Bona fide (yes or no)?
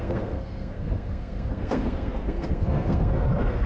no